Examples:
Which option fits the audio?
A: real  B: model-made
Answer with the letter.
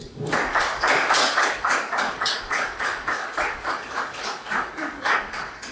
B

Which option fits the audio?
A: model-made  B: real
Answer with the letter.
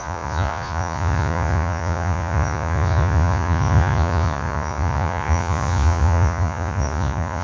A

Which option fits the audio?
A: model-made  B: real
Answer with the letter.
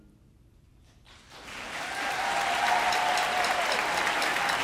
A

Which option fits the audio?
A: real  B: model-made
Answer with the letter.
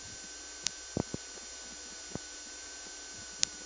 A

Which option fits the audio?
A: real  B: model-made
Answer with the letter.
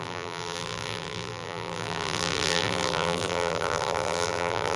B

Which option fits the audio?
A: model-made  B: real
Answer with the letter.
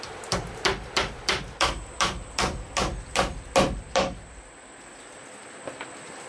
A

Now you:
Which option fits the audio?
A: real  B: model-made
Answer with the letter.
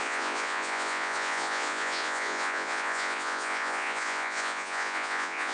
B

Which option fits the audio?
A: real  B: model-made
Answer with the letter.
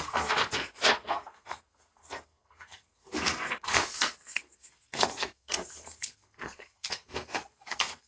B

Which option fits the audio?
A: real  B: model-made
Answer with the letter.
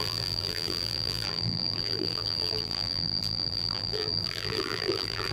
B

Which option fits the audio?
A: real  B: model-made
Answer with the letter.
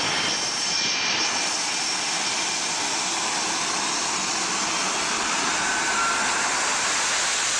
A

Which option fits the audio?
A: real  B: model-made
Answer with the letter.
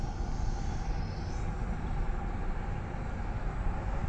A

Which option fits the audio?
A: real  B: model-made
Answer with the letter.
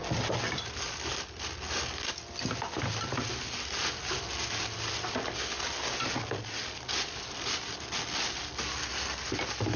A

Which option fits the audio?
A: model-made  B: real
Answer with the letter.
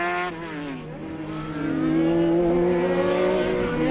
B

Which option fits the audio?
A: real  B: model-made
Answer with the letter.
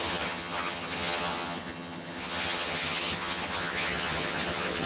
B